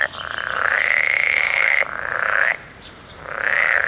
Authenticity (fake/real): fake